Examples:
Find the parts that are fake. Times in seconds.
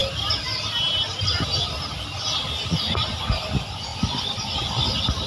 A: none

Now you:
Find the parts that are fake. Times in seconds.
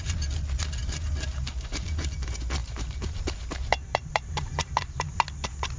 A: 0.8-2.1 (vocoder, BigVGAN v2); 2.6-4.7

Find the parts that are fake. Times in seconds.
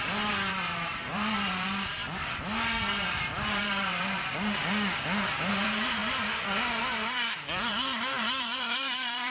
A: 0.0-2.0 (vocoder, BigVGAN v2); 2.9-4.6; 5.5-6.0; 6.8-9.3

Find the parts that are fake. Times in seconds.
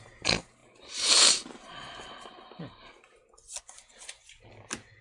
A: none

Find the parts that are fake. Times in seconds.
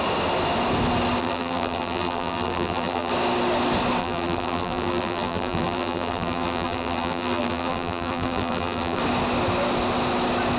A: 1.2-3.1 (vocoder, BigVGAN v2); 4.0-9.0